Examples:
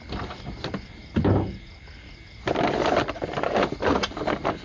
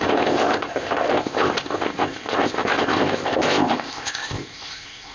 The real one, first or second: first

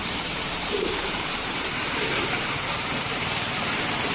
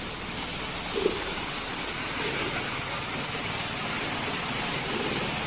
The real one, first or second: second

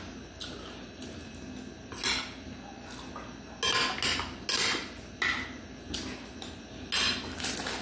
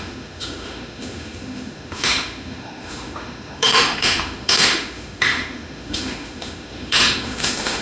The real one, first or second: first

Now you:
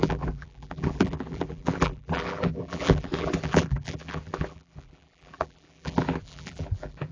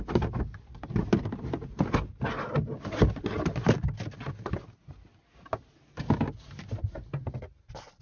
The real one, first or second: second